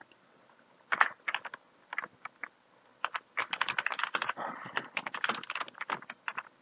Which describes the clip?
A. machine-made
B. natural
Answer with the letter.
B